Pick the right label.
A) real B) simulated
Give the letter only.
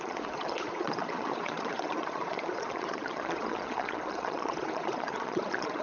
B